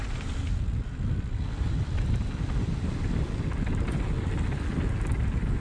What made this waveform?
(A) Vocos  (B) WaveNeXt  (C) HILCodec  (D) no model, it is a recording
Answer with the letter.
D